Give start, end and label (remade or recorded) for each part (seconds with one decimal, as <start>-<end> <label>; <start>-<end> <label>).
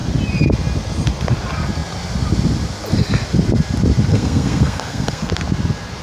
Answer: 0.0-4.1 recorded; 4.1-5.3 remade; 5.3-6.0 recorded